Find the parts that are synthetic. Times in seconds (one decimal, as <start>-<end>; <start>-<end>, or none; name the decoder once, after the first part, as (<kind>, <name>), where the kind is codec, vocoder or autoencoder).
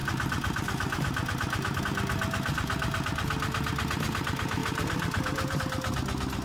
0.0-1.8 (vocoder, BigVGAN v2); 4.6-5.6